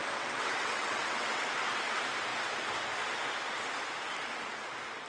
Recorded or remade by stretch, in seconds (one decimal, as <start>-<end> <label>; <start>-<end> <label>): 0.0-1.5 remade; 1.5-5.1 recorded